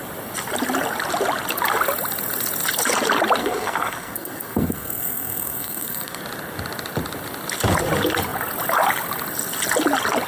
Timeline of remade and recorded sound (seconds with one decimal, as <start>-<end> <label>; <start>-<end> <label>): 0.0-3.4 recorded; 3.4-6.2 remade; 6.2-10.3 recorded

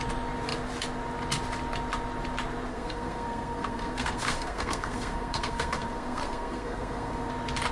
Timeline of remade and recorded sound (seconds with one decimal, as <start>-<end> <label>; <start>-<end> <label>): 0.0-2.7 recorded; 2.7-7.3 remade; 7.3-7.7 recorded

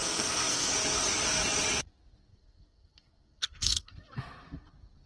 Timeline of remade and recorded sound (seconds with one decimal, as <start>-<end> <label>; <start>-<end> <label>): 0.0-0.7 remade; 0.7-2.3 recorded; 2.3-3.9 remade; 3.9-5.1 recorded

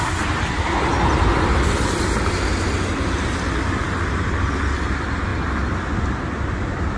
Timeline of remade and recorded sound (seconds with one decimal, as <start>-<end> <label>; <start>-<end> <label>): 0.0-7.0 recorded